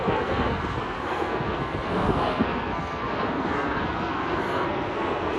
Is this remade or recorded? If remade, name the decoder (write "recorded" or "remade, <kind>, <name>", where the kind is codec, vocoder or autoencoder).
remade, codec, SNAC